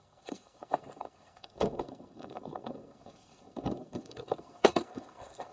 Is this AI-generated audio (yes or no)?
yes